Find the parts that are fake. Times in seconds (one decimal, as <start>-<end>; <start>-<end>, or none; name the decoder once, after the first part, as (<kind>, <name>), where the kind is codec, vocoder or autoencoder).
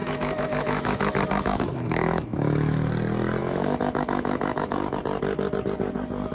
0.0-2.9 (autoencoder, DAC-VAE); 3.4-5.0